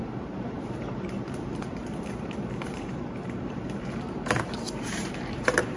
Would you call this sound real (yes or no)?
no